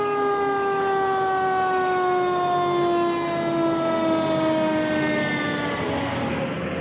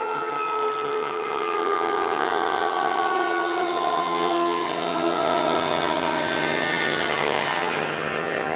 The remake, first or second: second